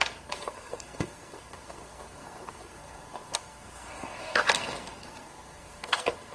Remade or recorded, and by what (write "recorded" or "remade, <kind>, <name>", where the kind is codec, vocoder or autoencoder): remade, codec, SNAC